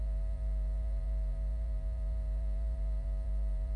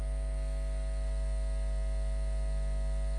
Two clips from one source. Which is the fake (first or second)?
first